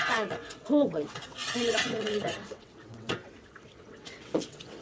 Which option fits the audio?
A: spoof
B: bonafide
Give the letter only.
A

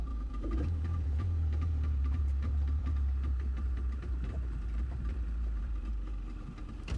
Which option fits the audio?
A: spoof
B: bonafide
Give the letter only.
A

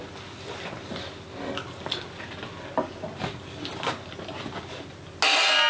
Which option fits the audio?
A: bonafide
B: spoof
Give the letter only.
A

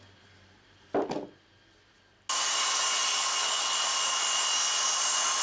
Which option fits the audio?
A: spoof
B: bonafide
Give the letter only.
B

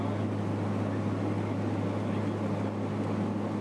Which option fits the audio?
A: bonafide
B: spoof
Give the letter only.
A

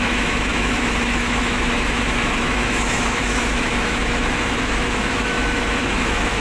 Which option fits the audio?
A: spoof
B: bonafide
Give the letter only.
A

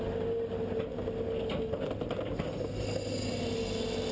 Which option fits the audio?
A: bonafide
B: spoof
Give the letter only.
A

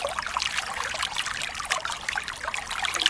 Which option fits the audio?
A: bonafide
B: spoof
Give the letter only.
A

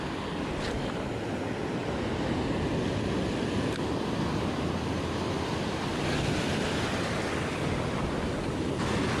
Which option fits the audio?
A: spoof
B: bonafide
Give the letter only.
B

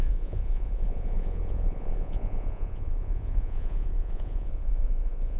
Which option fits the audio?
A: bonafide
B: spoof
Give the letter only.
B